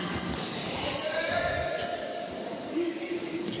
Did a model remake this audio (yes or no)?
yes